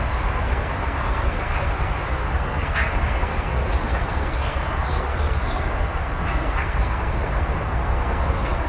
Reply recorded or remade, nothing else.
remade